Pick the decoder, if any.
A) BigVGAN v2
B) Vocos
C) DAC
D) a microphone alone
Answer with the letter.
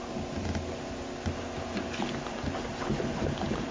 D